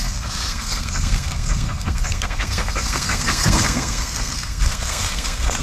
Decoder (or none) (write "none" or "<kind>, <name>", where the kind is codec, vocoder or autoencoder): codec, SNAC